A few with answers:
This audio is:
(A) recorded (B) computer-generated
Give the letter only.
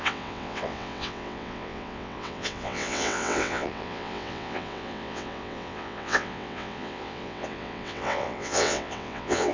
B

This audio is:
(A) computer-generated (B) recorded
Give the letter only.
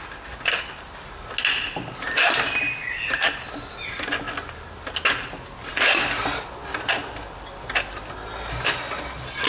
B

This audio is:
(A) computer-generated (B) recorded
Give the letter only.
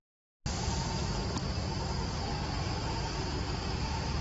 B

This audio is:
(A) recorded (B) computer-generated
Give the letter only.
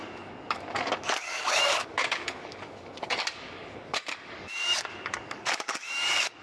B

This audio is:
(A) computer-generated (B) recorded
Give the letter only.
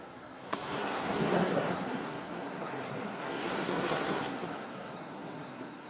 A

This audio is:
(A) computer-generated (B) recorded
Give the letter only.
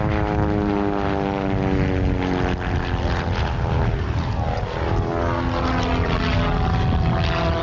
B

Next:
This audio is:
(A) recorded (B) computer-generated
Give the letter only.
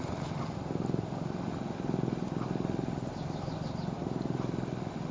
A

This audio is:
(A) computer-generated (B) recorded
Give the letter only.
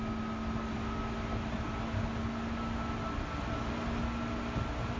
B